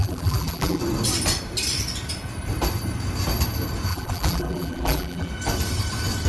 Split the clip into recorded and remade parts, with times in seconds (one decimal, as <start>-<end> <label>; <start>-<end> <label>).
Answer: 0.0-0.8 remade; 0.8-3.9 recorded; 3.9-5.3 remade; 5.3-6.3 recorded